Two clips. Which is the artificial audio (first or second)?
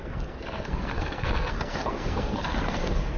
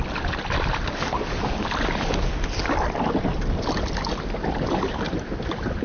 first